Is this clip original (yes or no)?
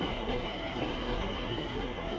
no